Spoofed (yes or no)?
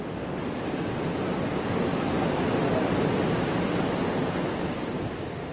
no